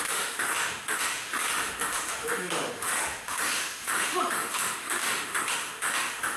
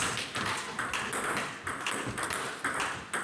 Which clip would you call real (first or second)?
second